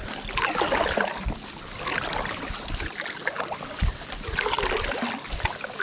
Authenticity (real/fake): real